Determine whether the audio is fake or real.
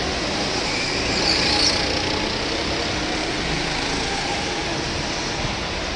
real